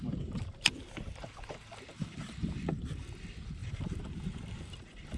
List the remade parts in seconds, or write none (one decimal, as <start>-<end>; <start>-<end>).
1.9-3.1; 3.6-5.2